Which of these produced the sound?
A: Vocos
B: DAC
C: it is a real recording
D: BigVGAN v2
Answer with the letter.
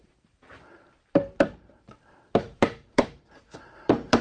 D